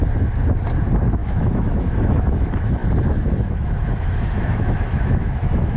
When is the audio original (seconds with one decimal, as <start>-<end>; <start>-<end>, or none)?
0.0-1.2; 2.4-2.8